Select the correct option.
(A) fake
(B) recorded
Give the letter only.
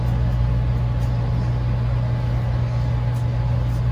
B